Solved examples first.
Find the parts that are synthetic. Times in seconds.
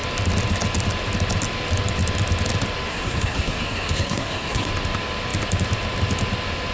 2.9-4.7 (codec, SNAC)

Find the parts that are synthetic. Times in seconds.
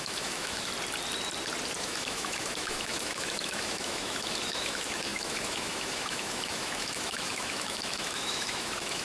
0.0-0.7 (autoencoder, DAC-VAE); 1.8-9.0